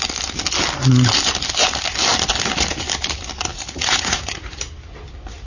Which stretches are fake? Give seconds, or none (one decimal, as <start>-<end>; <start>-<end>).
3.5-4.5